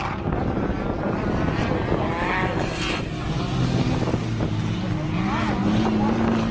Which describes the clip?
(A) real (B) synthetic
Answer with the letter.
A